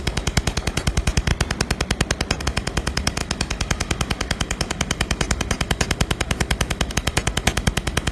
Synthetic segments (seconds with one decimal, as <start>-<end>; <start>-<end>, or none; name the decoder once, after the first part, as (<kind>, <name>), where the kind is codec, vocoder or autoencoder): 0.0-1.3 (autoencoder, DAC-VAE); 2.4-8.1